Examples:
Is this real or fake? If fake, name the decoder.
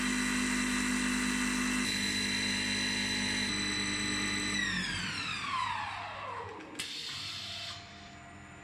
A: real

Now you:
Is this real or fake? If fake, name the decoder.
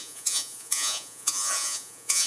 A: fake, vocoder, Vocos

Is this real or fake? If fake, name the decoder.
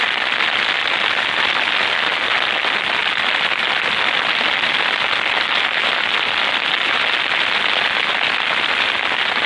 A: real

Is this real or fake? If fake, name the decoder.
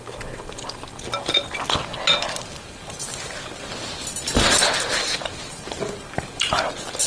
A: real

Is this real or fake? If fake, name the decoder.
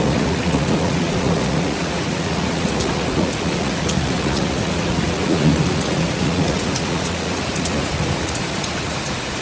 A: fake, vocoder, Vocos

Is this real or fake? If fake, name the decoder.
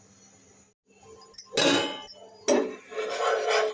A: real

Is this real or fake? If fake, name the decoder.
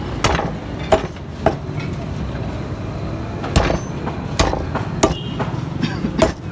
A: real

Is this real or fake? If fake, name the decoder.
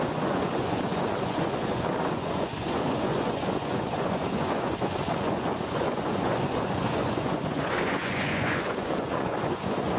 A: fake, vocoder, Vocos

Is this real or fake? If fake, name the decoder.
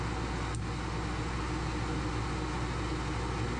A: real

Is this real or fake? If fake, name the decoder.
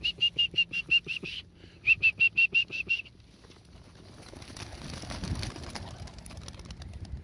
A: real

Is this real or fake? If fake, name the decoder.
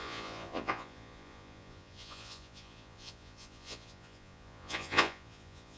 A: fake, vocoder, Vocos